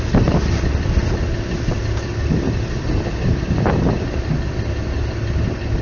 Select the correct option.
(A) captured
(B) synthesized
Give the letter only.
A